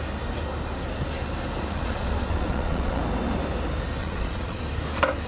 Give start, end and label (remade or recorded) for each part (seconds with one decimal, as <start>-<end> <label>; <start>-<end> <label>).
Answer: 0.0-1.7 recorded; 1.7-3.0 remade; 3.0-4.0 recorded; 4.0-4.6 remade; 4.6-5.3 recorded